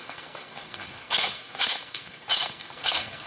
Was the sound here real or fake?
fake